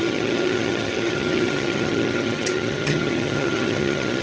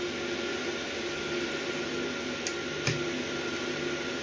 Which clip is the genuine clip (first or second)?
second